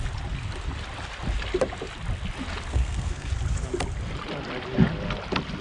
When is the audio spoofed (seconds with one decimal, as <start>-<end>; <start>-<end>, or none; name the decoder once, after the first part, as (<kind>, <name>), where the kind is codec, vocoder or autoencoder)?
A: 2.7-3.3 (codec, SNAC)